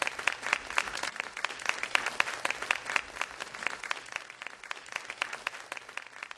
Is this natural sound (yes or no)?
yes